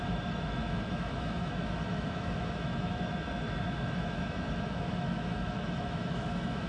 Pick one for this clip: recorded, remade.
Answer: remade